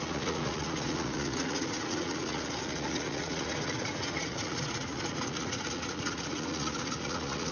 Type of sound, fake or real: fake